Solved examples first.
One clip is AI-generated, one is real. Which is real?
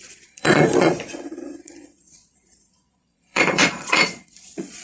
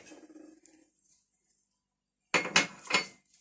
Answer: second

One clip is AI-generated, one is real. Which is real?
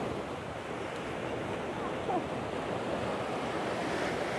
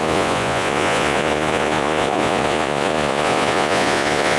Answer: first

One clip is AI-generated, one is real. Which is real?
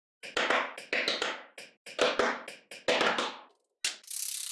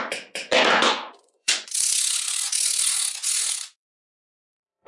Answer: first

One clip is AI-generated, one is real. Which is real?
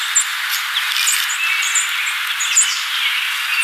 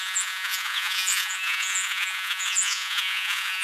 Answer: first